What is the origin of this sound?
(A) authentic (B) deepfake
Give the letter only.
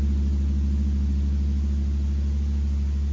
A